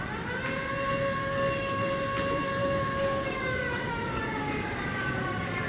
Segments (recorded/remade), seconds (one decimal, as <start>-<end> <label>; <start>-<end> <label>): 0.0-1.2 recorded; 1.2-1.9 remade; 1.9-2.6 recorded; 2.6-5.7 remade